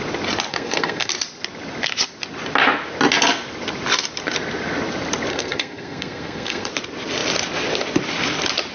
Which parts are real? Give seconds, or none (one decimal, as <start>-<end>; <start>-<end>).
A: 0.0-0.5; 1.1-5.3; 6.7-8.7